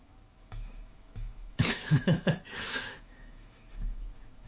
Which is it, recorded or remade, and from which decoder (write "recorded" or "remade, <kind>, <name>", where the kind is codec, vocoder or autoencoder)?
remade, autoencoder, DAC-VAE